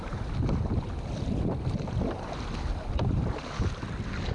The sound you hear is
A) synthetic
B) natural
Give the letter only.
B